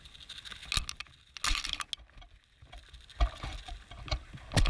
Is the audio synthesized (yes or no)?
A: no